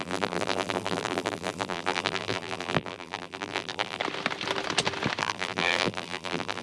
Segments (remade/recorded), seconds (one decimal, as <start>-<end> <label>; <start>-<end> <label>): 0.0-4.0 remade; 4.0-5.2 recorded; 5.2-6.6 remade